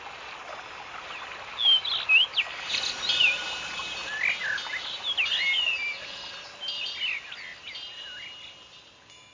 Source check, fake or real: real